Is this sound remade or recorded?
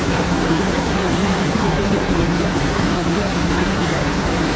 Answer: remade